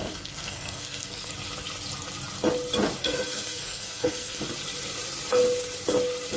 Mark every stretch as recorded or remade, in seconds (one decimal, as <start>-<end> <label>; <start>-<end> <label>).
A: 0.0-1.3 remade; 1.3-3.0 recorded; 3.0-4.4 remade; 4.4-6.4 recorded